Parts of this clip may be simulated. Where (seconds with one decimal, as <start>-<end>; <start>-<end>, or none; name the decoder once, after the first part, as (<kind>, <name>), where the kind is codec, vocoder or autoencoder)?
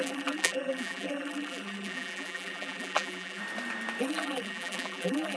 0.0-3.4 (vocoder, BigVGAN v2); 4.0-5.4